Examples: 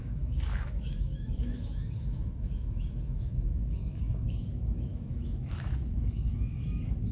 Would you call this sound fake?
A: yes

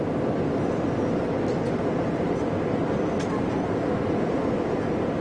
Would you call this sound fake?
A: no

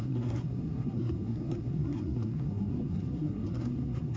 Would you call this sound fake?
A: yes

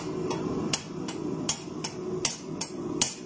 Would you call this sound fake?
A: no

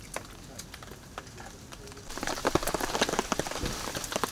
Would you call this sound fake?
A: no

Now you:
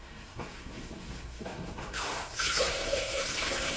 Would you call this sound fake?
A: yes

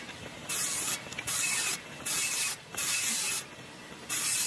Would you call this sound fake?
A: yes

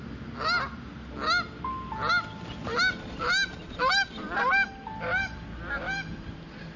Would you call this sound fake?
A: no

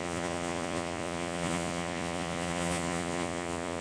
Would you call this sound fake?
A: yes